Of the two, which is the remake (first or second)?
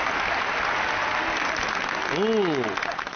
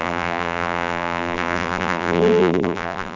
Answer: second